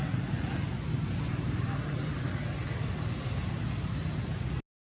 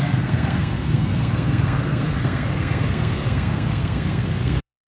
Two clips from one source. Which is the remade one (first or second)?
second